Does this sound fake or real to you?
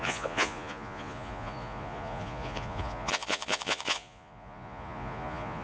fake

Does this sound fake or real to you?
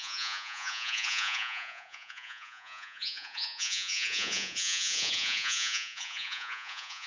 fake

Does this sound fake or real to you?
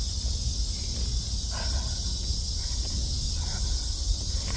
real